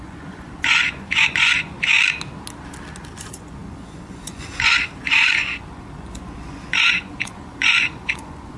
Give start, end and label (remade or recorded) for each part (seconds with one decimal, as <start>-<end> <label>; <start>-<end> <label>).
0.0-1.9 remade; 1.9-3.2 recorded; 3.2-8.6 remade